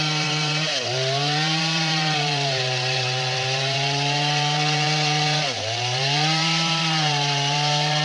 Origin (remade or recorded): remade